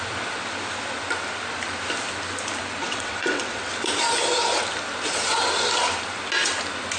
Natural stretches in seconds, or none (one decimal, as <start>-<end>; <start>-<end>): 0.0-2.8; 3.7-7.0

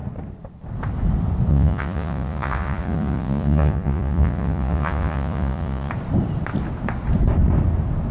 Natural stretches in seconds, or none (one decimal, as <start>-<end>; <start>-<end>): 0.0-1.5; 5.9-8.1

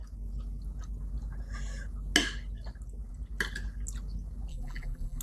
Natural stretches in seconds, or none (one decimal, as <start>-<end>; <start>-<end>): 0.0-4.5

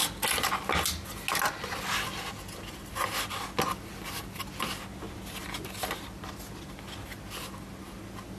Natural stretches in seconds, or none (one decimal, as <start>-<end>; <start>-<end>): 0.0-8.4